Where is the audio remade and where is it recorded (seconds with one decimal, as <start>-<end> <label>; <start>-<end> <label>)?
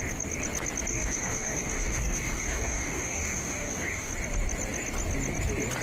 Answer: 0.0-0.9 recorded; 0.9-4.1 remade; 4.1-5.8 recorded